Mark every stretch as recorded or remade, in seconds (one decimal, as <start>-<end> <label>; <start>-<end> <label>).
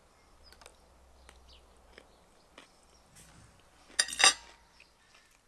0.0-5.5 recorded